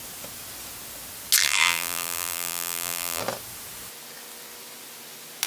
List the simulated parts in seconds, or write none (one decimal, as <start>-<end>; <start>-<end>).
1.4-3.2